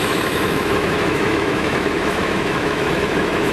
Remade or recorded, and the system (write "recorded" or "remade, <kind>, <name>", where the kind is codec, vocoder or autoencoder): remade, autoencoder, DAC-VAE